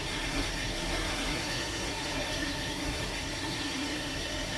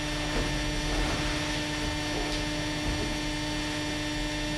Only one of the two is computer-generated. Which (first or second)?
first